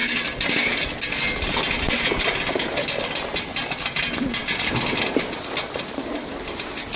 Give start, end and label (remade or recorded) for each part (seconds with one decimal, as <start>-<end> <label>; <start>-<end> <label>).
0.0-7.0 recorded